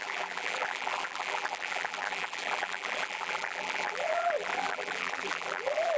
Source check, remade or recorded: remade